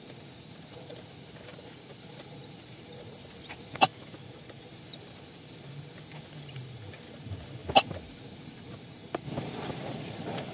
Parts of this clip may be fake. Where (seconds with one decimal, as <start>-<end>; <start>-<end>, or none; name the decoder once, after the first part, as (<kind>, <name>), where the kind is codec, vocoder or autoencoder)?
1.5-2.1 (vocoder, BigVGAN v2)